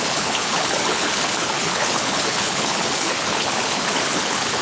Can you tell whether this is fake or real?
fake